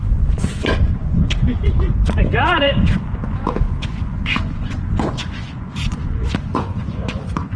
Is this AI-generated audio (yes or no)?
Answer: yes